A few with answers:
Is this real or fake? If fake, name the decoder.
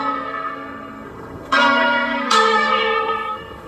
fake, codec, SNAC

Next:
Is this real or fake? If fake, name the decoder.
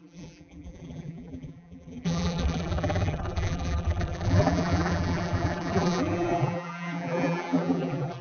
fake, vocoder, BigVGAN v2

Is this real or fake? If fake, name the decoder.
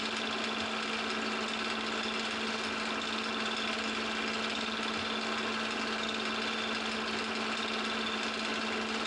real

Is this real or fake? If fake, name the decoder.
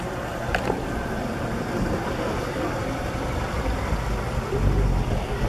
fake, vocoder, BigVGAN v2